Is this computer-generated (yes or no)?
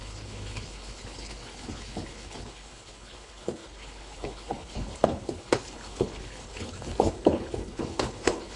yes